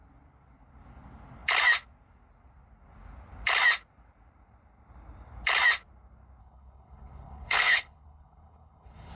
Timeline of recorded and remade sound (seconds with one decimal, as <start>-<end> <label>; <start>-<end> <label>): 0.0-6.4 recorded; 6.4-9.1 remade